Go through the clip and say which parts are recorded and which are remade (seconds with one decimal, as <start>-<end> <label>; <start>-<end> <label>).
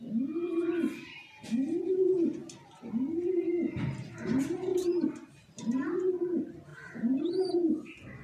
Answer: 0.0-4.7 recorded; 4.7-6.1 remade; 6.1-6.7 recorded; 6.7-7.3 remade; 7.3-8.2 recorded